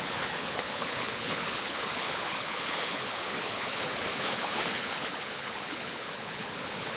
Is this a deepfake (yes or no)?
yes